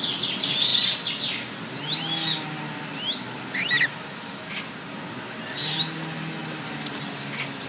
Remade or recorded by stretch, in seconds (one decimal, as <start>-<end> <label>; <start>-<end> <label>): 0.0-7.7 recorded